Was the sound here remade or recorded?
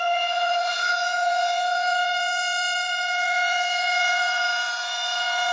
remade